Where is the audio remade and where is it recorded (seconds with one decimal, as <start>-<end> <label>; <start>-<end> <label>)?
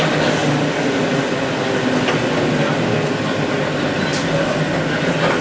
0.0-5.4 recorded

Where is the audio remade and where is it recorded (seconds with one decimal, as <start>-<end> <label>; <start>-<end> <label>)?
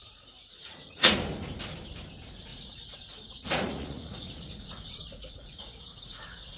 0.0-1.1 remade; 1.1-2.5 recorded; 2.5-6.6 remade